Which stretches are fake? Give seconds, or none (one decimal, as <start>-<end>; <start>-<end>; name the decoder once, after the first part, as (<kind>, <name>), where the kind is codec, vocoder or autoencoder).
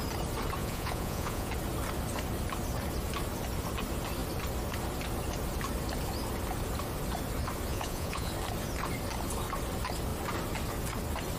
0.6-1.5 (vocoder, Vocos); 7.7-8.3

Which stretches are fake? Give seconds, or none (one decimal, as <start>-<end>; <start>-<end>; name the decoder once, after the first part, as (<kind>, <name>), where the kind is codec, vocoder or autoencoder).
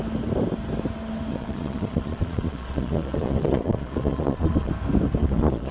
1.3-4.7 (vocoder, Vocos); 5.2-5.7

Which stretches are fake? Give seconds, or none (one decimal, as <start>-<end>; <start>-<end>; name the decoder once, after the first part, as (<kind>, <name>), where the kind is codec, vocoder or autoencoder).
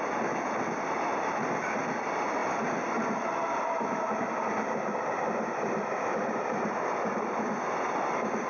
none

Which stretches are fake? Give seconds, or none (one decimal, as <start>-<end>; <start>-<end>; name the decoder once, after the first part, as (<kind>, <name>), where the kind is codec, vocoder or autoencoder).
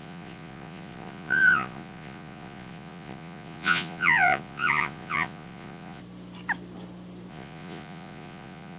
0.0-6.0 (vocoder, Vocos); 7.3-8.8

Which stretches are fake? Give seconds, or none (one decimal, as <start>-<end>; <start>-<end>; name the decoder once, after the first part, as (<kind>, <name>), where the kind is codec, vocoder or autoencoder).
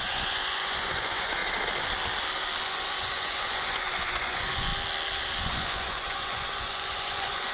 0.0-1.4 (vocoder, Vocos); 2.6-4.7; 5.4-7.5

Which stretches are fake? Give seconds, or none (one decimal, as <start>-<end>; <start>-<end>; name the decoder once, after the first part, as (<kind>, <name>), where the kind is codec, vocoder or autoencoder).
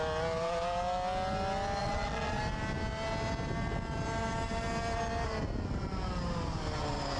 1.8-2.4 (vocoder, Vocos)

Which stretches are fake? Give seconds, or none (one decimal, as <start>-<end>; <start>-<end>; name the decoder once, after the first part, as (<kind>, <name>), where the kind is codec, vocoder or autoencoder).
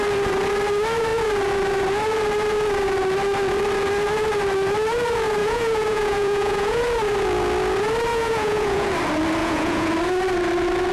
5.4-6.8 (vocoder, Vocos); 8.1-8.9; 9.4-9.9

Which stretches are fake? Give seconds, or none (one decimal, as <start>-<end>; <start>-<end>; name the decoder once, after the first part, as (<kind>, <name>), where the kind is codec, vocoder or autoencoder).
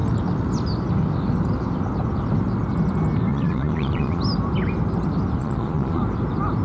3.3-4.2 (vocoder, Vocos); 5.4-6.0